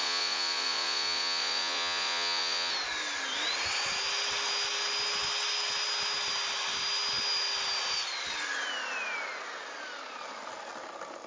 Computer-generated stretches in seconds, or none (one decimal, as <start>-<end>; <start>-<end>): 0.0-2.7